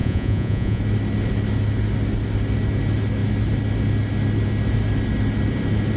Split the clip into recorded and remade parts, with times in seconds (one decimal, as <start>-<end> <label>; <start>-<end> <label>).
0.0-0.8 remade; 0.8-6.0 recorded